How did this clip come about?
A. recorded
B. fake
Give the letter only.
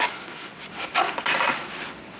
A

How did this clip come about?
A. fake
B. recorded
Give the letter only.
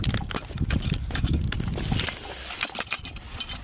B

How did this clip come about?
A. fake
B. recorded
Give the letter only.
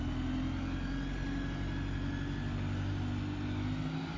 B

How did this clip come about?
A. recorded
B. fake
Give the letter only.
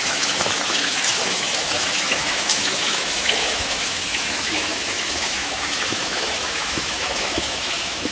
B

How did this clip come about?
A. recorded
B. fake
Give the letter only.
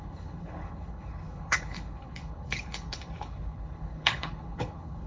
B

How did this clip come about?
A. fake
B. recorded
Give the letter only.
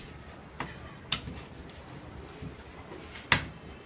B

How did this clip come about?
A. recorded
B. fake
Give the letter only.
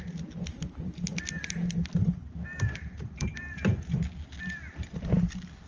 A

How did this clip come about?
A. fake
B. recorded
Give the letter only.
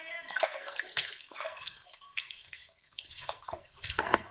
A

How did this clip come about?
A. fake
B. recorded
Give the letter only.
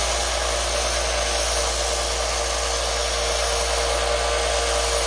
B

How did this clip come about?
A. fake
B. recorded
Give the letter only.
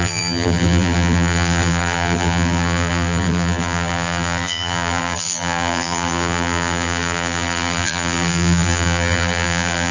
A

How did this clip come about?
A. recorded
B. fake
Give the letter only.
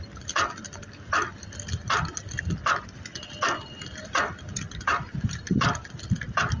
A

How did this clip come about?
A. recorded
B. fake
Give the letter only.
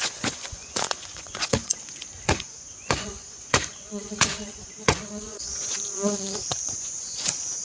B